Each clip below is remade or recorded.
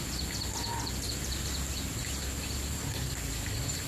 recorded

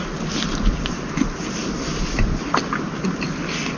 recorded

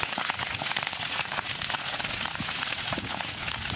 remade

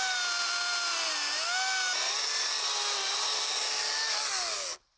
recorded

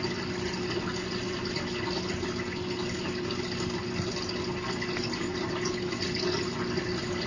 recorded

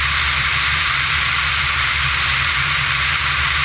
remade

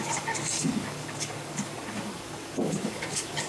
remade